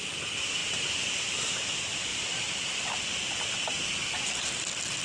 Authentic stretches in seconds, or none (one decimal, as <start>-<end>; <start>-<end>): 0.6-1.3